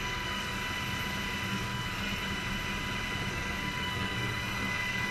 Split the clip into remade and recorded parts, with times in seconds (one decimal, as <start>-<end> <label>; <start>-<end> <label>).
0.0-0.6 remade; 0.6-1.5 recorded; 1.5-2.2 remade; 2.2-3.3 recorded; 3.3-5.1 remade